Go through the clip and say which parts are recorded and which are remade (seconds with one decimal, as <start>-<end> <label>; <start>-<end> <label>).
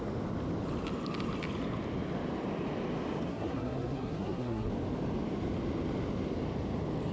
0.0-3.3 recorded; 3.3-4.7 remade; 4.7-7.1 recorded